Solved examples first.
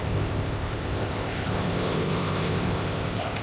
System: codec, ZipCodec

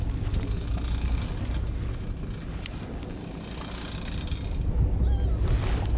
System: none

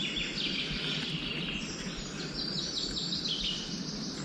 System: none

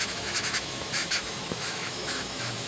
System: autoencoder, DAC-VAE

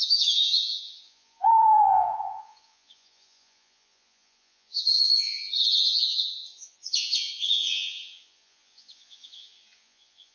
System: vocoder, Vocos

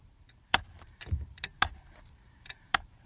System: vocoder, BigVGAN v2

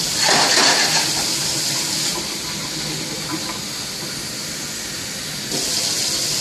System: none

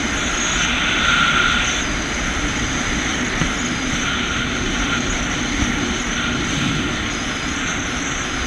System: none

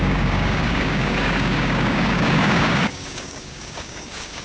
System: codec, DAC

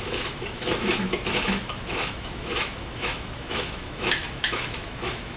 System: autoencoder, DAC-VAE